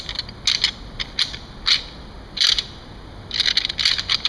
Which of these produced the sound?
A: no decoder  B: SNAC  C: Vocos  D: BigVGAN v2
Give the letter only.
A